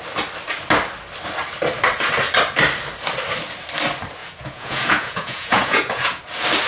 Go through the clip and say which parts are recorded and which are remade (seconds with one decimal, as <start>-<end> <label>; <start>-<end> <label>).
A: 0.0-4.2 recorded; 4.2-6.2 remade; 6.2-6.7 recorded